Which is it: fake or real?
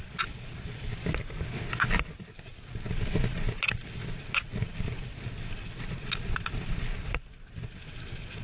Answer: real